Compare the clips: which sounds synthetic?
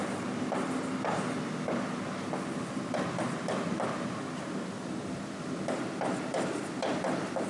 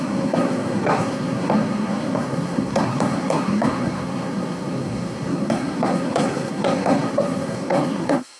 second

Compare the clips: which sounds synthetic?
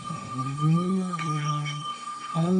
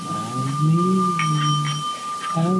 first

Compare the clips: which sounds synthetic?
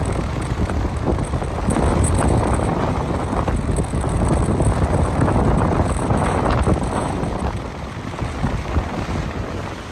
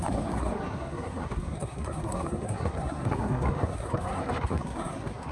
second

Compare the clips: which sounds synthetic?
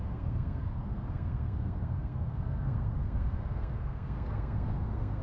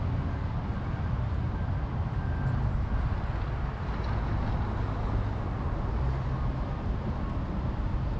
first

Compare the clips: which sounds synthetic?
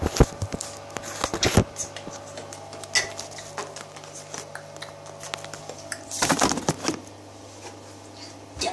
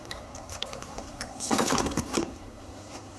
second